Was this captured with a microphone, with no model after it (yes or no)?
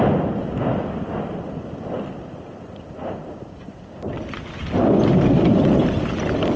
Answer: no